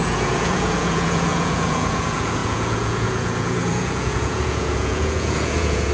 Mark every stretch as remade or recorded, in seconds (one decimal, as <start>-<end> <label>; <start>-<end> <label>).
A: 0.0-5.9 remade